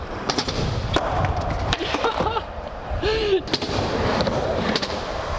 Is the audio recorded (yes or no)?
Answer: no